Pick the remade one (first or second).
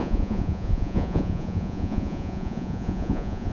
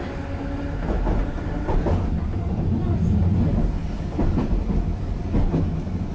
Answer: first